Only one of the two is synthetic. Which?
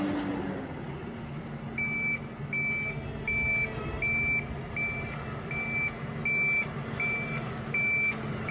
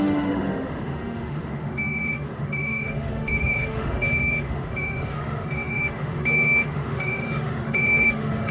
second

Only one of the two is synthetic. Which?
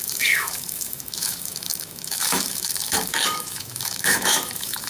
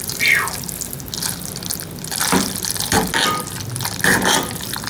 first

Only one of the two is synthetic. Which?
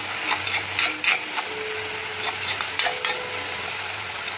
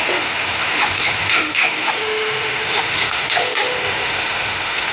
second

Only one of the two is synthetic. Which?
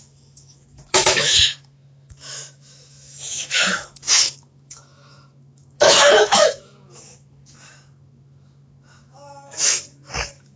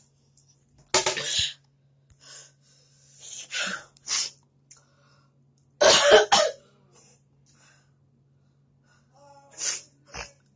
first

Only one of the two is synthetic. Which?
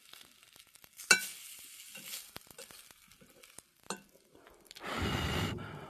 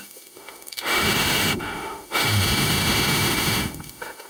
second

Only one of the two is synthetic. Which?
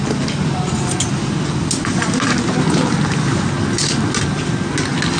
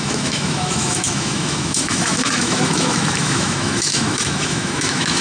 second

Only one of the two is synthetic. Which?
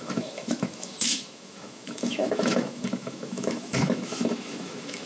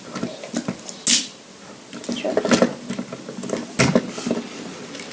first